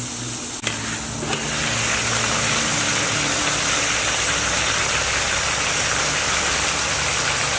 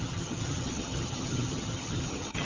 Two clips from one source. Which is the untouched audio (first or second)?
first